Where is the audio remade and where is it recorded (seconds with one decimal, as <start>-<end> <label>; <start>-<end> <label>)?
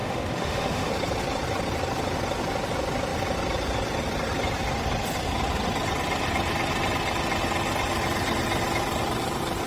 0.0-0.9 remade; 0.9-9.7 recorded